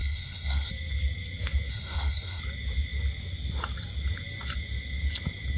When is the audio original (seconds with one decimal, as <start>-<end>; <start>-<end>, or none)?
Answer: 0.7-1.7; 2.4-5.6